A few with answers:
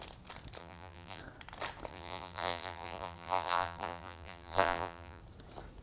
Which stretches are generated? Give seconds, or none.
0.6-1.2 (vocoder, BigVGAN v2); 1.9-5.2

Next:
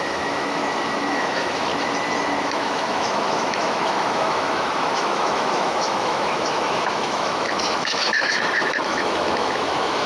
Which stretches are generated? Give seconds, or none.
0.0-0.6 (autoencoder, DAC-VAE); 1.1-1.7; 2.4-10.1

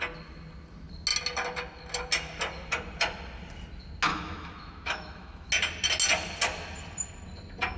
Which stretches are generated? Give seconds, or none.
4.1-5.5 (autoencoder, DAC-VAE)

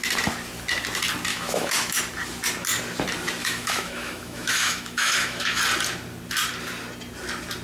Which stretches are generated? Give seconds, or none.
1.3-2.0 (autoencoder, DAC-VAE); 3.4-5.6